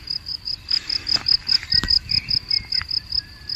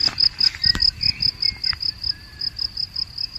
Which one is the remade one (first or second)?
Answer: first